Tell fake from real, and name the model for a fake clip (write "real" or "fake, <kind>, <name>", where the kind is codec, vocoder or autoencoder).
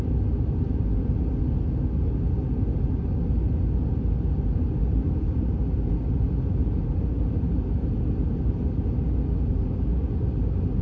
real